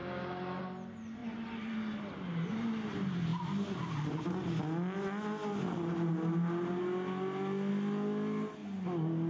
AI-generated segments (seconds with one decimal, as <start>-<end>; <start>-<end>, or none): none